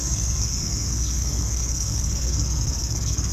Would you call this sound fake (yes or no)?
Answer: yes